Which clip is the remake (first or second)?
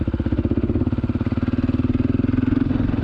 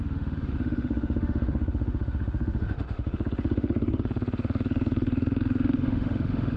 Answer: second